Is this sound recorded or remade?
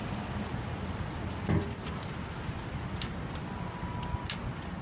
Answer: recorded